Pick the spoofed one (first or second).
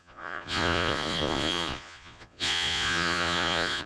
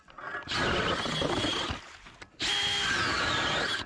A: first